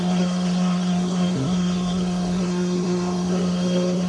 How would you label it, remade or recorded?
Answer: remade